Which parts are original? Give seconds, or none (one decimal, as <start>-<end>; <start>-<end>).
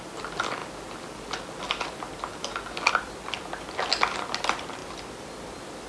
0.0-5.9